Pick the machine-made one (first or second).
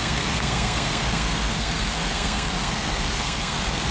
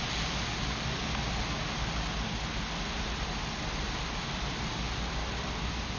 first